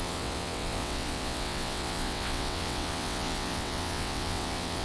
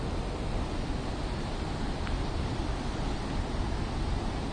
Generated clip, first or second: first